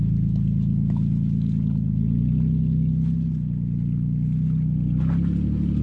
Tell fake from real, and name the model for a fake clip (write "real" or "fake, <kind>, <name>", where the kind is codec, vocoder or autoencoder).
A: real